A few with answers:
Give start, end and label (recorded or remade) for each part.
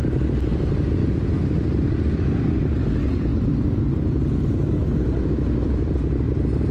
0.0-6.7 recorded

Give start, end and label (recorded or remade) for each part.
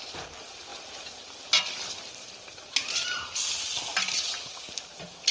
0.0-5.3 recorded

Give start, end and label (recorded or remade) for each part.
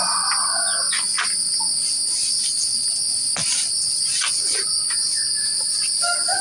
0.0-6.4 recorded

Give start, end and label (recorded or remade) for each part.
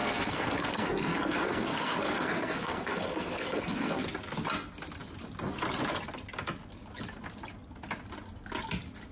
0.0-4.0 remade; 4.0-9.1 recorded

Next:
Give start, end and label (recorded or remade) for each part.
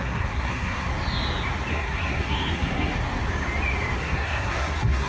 0.0-0.9 remade; 0.9-1.7 recorded; 1.7-3.0 remade; 3.0-4.0 recorded; 4.0-5.1 remade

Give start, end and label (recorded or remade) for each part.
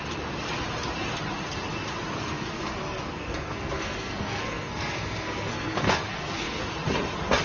0.0-2.2 recorded; 2.2-6.6 remade; 6.6-7.4 recorded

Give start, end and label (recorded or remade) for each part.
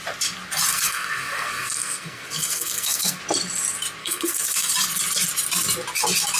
0.0-0.7 recorded; 0.7-3.2 remade; 3.2-4.0 recorded; 4.0-4.7 remade; 4.7-6.4 recorded